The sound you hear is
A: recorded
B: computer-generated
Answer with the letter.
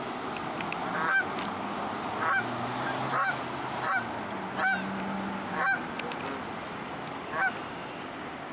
A